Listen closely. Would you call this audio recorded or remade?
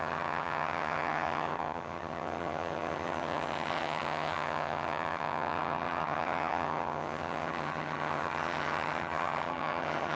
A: remade